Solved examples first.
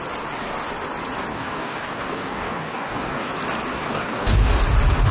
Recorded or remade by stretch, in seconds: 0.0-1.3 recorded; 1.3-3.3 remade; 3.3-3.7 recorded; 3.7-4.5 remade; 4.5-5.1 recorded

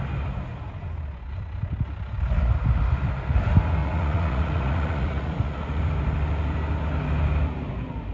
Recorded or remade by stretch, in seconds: 0.0-3.8 recorded; 3.8-5.8 remade; 5.8-8.1 recorded